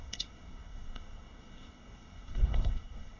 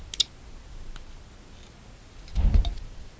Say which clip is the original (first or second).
second